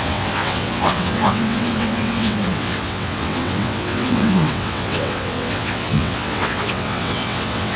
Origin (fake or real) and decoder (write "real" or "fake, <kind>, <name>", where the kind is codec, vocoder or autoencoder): fake, vocoder, WaveNeXt